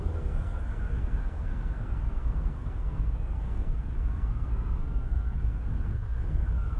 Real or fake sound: fake